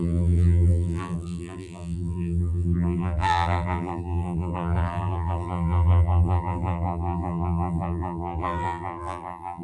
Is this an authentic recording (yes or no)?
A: no